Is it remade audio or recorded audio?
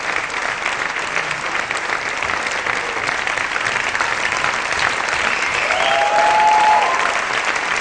recorded